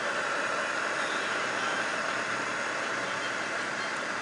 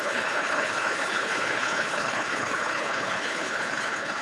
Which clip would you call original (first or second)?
first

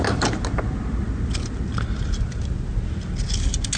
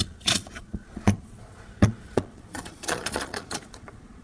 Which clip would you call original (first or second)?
first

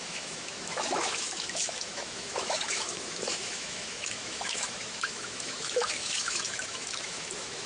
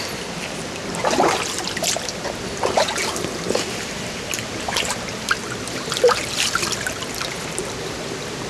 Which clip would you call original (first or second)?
second